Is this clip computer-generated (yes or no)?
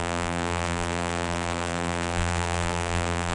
yes